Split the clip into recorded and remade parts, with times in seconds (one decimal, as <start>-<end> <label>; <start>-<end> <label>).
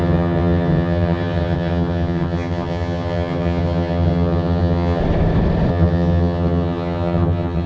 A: 0.0-5.0 remade; 5.0-5.7 recorded; 5.7-7.7 remade